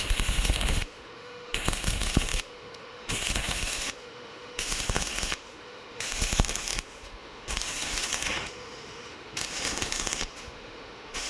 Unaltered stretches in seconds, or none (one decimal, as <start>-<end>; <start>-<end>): none